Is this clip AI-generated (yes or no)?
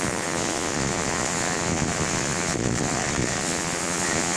yes